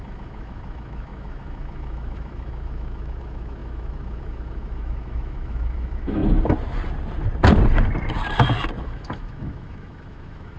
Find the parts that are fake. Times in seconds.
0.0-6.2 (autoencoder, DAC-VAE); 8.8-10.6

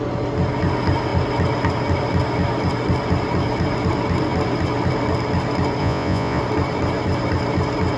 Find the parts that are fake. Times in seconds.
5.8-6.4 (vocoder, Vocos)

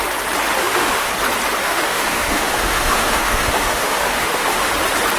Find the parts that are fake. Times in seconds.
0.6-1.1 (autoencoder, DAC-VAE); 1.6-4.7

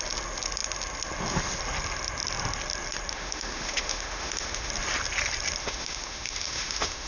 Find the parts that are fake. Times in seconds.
3.1-4.7 (autoencoder, DAC-VAE); 5.6-7.1

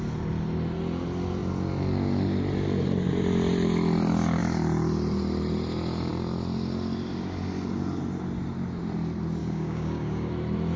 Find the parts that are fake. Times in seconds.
9.4-10.3 (codec, DAC)

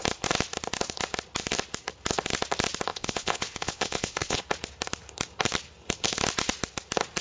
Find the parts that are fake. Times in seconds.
2.9-4.4 (vocoder, Vocos)

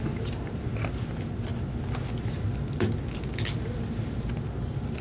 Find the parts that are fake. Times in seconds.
none